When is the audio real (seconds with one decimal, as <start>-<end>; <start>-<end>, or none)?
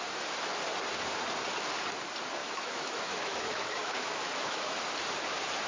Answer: 0.0-2.4; 4.8-5.7